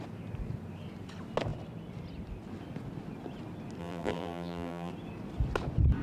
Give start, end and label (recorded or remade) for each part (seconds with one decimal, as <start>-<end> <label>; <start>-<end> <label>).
0.0-3.8 recorded; 3.8-4.9 remade; 4.9-6.0 recorded